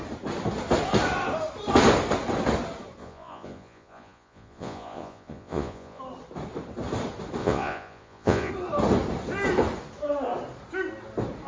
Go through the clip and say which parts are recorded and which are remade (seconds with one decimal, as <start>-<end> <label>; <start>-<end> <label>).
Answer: 0.0-3.0 recorded; 3.0-6.0 remade; 6.0-7.4 recorded; 7.4-8.5 remade; 8.5-11.5 recorded